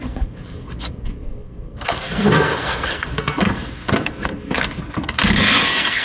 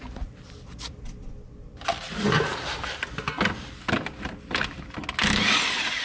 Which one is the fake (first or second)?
first